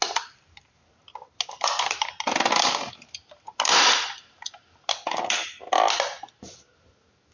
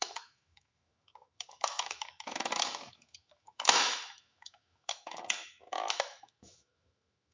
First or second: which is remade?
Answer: second